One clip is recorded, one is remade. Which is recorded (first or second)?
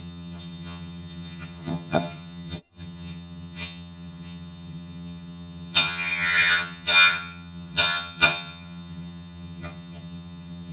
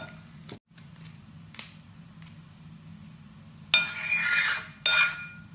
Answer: second